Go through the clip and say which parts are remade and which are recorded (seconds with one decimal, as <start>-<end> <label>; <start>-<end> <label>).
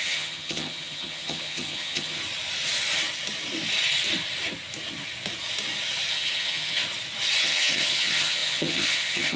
0.0-2.2 remade; 2.2-6.1 recorded; 6.1-6.8 remade; 6.8-7.4 recorded; 7.4-9.4 remade